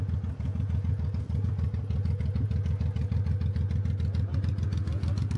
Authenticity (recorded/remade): recorded